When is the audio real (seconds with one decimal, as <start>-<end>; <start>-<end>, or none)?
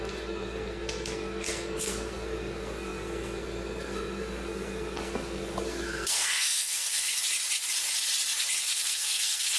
7.2-8.6